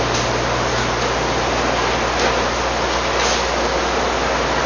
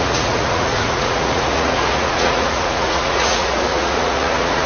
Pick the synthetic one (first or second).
second